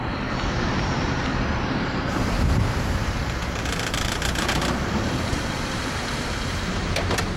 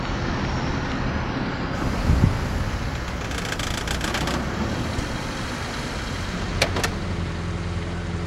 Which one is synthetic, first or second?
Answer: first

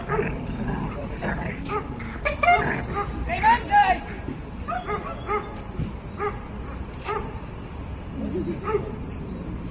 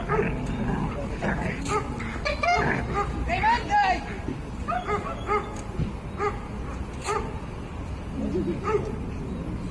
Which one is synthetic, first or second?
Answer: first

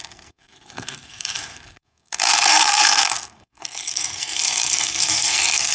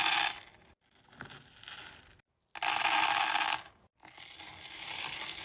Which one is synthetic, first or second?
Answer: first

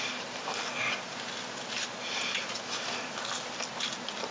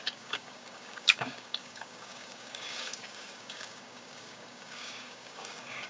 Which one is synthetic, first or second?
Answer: second